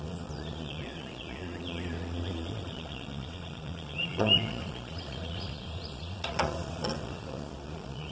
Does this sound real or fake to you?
fake